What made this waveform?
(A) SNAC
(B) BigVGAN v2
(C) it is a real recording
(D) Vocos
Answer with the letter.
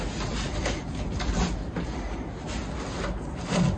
C